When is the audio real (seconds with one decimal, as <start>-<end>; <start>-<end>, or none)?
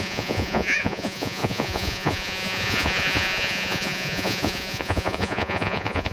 none